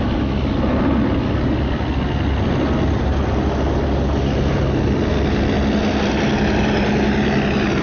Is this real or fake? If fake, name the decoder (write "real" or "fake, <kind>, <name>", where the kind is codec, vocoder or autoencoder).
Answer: real